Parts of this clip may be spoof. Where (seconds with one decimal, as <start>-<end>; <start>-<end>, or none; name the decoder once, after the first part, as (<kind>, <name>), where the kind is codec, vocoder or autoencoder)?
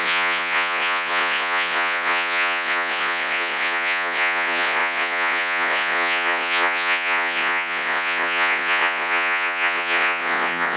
0.0-10.8 (vocoder, Vocos)